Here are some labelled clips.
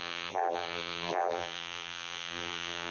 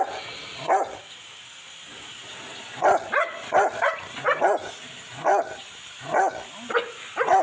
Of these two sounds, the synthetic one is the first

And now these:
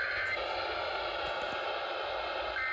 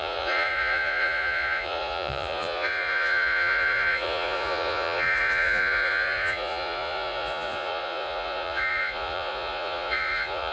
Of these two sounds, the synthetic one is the second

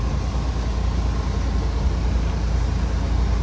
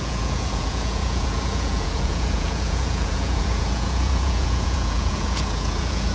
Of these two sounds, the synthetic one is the second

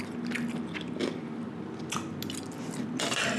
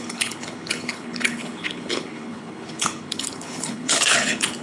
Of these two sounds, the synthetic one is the second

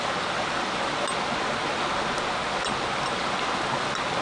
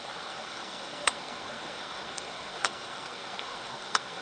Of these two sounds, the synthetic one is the second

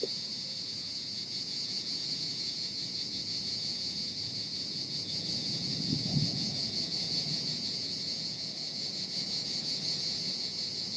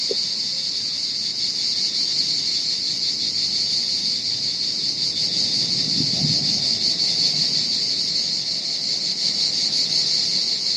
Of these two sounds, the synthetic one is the first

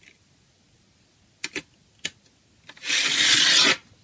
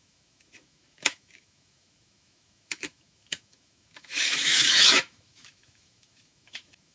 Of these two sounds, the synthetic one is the second